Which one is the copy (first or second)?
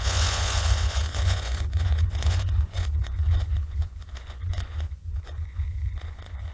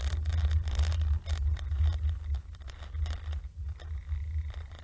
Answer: first